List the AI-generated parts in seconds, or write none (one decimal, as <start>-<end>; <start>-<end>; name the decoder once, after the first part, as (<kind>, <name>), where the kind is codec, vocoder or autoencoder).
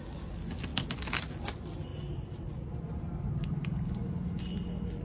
1.9-2.5 (vocoder, BigVGAN v2)